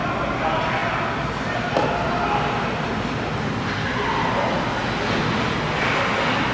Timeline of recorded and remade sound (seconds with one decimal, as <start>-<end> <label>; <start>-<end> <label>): 0.0-6.5 recorded